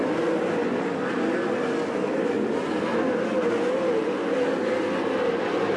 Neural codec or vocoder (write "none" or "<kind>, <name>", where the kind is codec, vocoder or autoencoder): none